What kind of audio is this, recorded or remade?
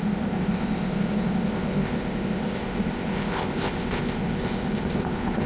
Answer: remade